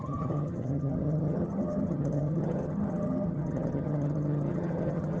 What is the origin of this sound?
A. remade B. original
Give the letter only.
A